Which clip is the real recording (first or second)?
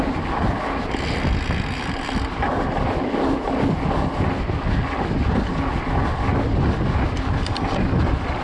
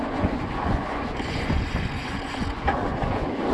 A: first